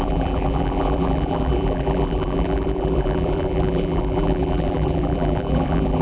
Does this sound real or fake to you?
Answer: fake